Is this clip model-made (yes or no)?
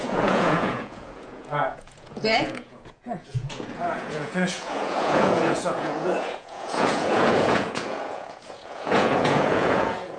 yes